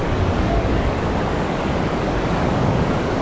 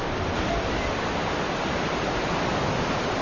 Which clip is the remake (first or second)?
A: first